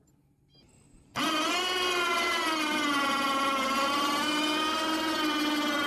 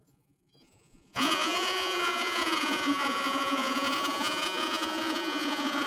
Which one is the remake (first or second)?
second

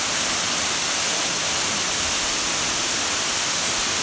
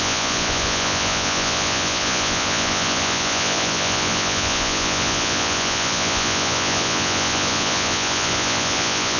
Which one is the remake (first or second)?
second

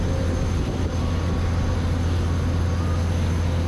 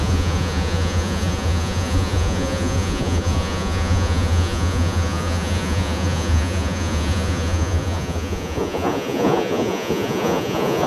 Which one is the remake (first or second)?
second